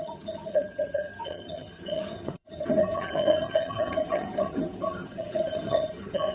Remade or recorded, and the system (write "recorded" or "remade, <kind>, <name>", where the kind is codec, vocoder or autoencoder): remade, vocoder, HiFi-GAN